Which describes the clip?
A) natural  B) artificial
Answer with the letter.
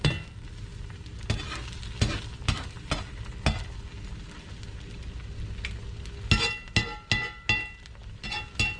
A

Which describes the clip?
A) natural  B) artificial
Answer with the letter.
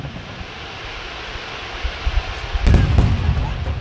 A